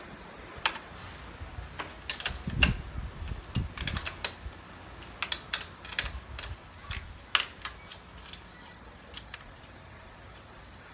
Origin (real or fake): real